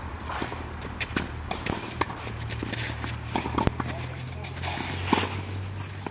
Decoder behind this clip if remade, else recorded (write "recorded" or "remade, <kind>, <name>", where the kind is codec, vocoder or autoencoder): recorded